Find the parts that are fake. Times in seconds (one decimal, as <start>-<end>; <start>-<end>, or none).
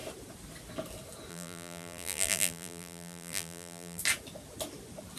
1.3-4.0